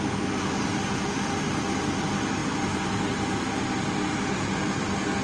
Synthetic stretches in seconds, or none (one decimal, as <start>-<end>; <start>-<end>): none